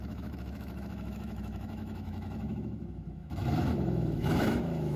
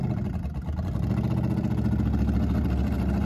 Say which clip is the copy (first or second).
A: first